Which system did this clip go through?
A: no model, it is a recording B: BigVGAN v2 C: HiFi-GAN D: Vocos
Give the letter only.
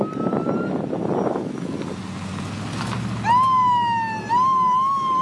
A